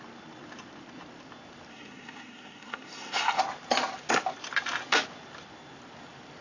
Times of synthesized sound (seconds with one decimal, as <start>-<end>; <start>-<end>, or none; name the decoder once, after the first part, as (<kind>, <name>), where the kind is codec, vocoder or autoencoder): 1.7-3.4 (codec, SNAC)

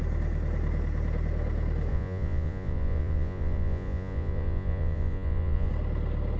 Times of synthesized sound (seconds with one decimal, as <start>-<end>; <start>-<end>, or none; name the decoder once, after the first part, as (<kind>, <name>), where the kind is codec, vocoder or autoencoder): 1.9-5.7 (vocoder, Vocos)

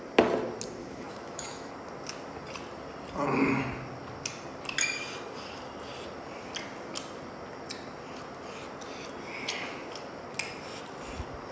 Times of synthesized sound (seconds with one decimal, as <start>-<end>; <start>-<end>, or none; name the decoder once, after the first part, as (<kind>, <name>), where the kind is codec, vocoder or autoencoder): 0.8-1.7 (autoencoder, DAC-VAE)

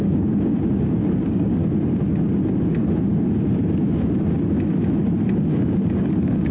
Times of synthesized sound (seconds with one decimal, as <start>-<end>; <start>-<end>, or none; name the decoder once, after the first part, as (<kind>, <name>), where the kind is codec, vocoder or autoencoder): 0.0-0.6 (codec, DAC); 1.2-1.6; 5.5-6.5

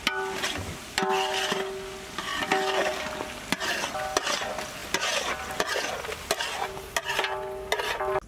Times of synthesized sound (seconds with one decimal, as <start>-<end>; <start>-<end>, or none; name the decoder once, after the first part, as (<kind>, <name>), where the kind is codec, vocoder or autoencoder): none

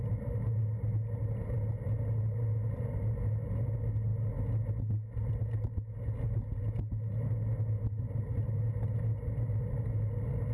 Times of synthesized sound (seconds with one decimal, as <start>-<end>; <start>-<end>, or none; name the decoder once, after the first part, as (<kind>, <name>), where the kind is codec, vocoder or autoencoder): none